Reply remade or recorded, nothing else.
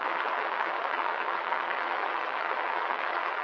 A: remade